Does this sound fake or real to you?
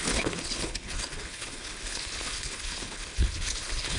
fake